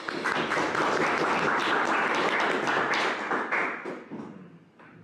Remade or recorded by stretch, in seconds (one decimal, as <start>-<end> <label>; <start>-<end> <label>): 0.0-1.6 recorded; 1.6-2.2 remade; 2.2-5.0 recorded